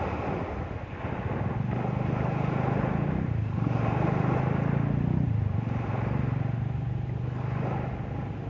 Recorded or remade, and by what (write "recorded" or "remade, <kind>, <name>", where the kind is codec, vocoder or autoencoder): recorded